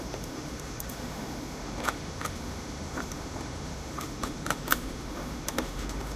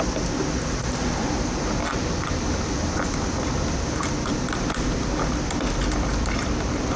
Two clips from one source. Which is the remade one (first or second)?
first